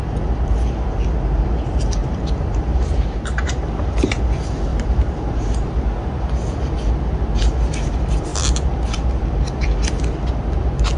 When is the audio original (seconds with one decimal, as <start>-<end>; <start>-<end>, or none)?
0.0-2.0; 4.2-4.7; 5.7-11.0